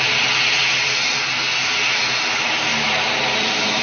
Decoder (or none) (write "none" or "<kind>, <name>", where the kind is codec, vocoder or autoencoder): none